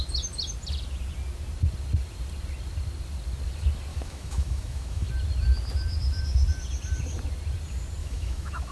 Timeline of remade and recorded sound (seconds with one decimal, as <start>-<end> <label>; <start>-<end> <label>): 0.0-3.9 recorded; 3.9-5.1 remade; 5.1-8.0 recorded; 8.0-8.7 remade